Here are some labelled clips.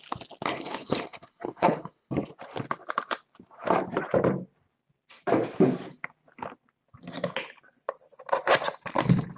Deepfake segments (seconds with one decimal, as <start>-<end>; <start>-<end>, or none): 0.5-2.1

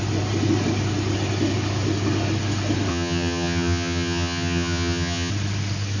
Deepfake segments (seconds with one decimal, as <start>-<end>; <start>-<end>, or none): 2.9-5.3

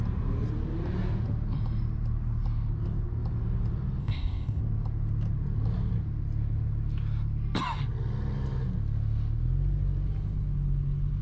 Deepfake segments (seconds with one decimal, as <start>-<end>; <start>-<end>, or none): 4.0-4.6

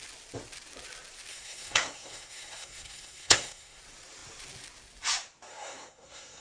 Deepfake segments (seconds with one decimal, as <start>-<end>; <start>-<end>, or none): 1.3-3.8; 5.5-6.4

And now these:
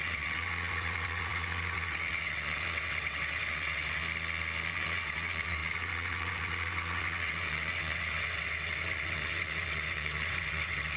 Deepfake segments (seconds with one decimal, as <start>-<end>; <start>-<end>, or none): 0.0-4.0; 4.7-11.0

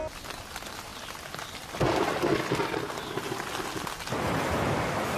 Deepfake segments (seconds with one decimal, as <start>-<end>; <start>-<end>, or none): none

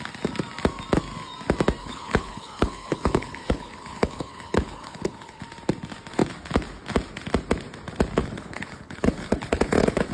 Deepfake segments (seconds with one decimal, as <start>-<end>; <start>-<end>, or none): 1.8-5.4; 8.2-10.1

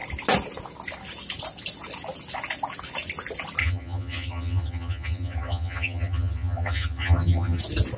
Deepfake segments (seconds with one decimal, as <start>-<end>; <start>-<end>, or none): 3.6-7.6